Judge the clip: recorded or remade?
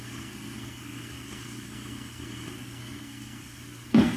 remade